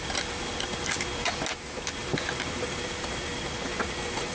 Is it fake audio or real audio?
real